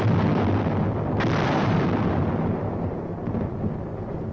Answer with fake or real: real